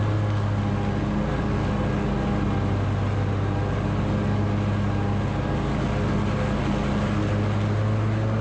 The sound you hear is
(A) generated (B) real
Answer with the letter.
B